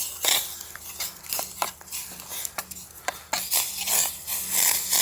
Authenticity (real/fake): real